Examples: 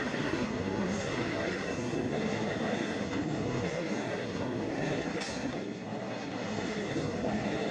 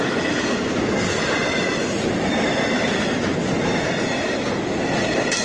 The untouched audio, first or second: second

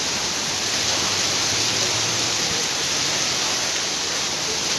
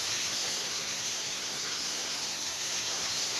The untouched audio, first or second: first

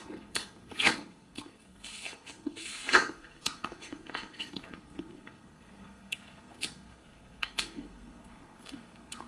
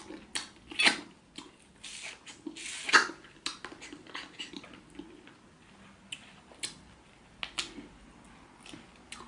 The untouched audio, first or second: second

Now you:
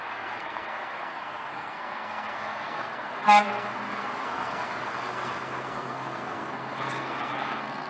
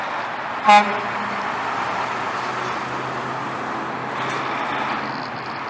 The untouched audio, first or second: second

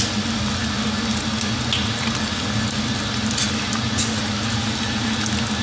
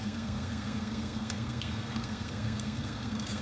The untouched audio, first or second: first